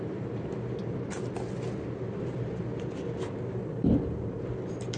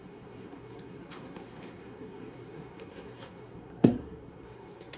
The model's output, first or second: second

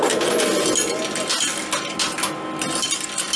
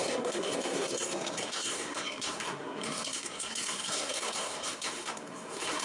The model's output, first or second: second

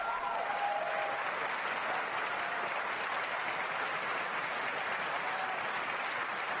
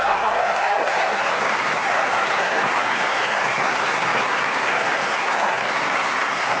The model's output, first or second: second